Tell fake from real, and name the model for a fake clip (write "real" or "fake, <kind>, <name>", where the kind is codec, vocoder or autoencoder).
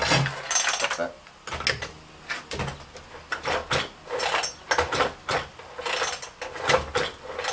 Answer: real